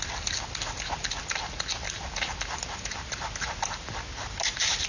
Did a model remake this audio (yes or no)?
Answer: no